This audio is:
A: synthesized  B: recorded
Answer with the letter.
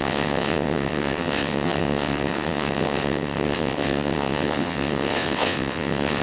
A